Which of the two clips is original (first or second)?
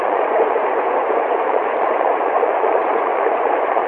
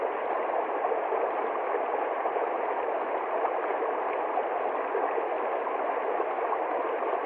second